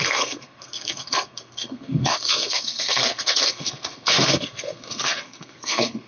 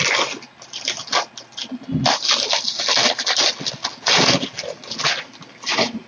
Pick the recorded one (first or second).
second